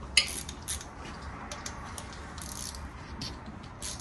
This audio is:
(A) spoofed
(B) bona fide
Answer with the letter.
B